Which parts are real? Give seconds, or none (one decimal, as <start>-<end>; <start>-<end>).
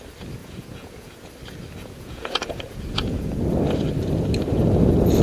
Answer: 0.0-0.4; 1.3-1.8; 3.3-5.2